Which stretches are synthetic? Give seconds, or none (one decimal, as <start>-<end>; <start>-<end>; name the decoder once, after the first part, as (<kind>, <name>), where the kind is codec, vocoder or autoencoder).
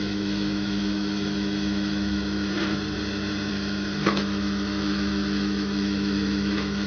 0.0-2.5 (autoencoder, DAC-VAE); 3.5-6.9